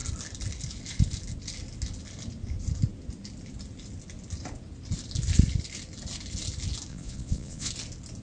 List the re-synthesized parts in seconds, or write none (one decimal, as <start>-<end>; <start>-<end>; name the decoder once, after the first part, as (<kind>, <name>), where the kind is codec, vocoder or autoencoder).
6.9-7.7 (vocoder, Vocos)